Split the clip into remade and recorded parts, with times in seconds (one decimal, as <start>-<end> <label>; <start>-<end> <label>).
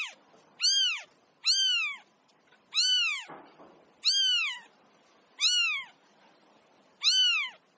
0.0-7.8 recorded